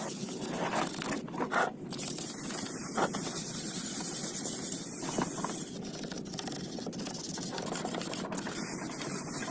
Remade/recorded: recorded